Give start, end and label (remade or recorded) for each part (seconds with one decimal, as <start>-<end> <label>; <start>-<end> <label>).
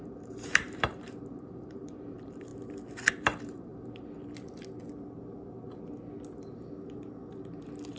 0.0-2.5 remade; 2.5-3.1 recorded; 3.1-3.7 remade; 3.7-8.0 recorded